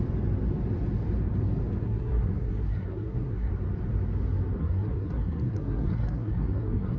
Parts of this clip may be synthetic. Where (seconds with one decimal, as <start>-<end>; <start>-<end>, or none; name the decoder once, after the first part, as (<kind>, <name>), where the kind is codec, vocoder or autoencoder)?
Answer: 1.8-3.5 (codec, SNAC); 4.6-7.0